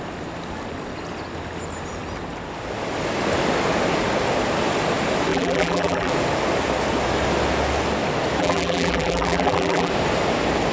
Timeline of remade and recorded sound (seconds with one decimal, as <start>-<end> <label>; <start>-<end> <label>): 0.0-5.3 recorded; 5.3-6.1 remade; 6.1-8.4 recorded; 8.4-9.9 remade; 9.9-10.7 recorded